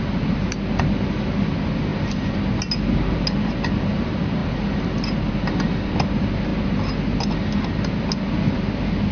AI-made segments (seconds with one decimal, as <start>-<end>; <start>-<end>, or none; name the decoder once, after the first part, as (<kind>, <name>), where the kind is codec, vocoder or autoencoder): none